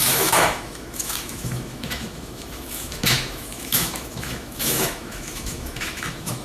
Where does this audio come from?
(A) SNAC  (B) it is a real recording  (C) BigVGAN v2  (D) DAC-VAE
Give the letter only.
D